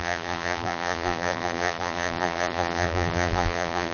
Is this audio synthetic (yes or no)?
yes